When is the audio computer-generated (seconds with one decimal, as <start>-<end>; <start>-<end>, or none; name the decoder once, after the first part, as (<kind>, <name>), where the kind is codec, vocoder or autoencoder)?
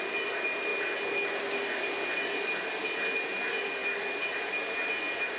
none